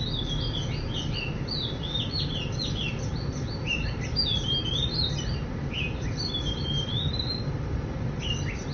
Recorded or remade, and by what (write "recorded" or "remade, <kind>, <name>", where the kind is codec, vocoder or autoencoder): recorded